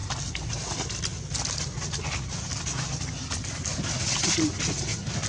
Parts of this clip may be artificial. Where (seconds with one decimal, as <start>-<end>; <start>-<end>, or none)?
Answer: none